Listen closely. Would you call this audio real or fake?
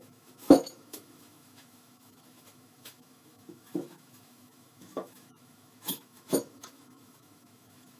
fake